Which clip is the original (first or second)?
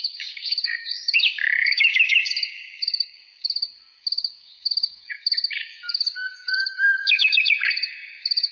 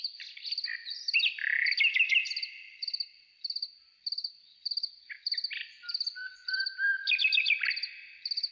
second